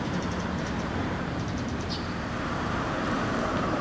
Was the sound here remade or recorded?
remade